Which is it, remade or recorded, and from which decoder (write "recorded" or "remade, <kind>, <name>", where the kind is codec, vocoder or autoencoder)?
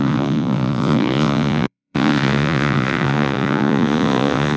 remade, vocoder, Vocos